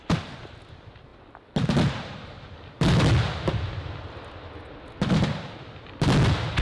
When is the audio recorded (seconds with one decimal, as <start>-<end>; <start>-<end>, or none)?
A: 0.0-6.6